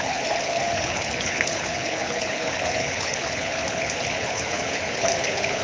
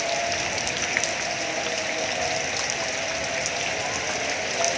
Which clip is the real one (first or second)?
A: second